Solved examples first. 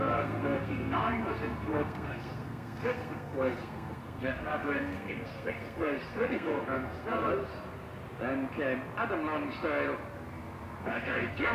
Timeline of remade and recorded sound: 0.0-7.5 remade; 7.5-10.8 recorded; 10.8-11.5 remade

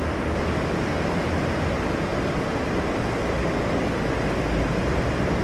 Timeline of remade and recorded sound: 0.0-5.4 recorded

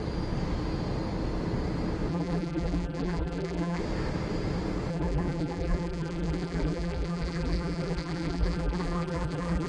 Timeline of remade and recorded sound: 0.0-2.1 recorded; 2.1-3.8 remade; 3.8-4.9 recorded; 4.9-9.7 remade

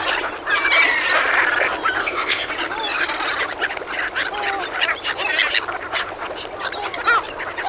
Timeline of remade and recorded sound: 0.0-2.0 recorded; 2.0-2.5 remade; 2.5-7.7 recorded

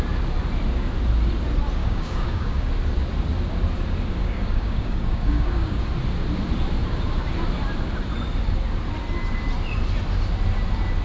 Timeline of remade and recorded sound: 0.0-1.8 recorded; 1.8-2.7 remade; 2.7-4.2 recorded; 4.2-5.8 remade; 5.8-11.0 recorded